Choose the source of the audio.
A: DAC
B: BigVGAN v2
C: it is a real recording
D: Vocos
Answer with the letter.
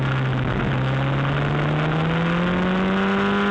C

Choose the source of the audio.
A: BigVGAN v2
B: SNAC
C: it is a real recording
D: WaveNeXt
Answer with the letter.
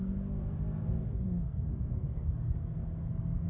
B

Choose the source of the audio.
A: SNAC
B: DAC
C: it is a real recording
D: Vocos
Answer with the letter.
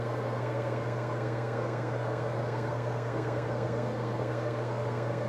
A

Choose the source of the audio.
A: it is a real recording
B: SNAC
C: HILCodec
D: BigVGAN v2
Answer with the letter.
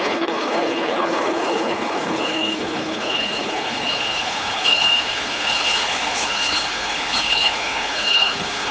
C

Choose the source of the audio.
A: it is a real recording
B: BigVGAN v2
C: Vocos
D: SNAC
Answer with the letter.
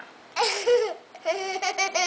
A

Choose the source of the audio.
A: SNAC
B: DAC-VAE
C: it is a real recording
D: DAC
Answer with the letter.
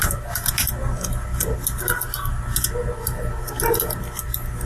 C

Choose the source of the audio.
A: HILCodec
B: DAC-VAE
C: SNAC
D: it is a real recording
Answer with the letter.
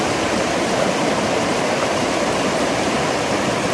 D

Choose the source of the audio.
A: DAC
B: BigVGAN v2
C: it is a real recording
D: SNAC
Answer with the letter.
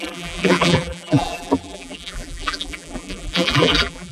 B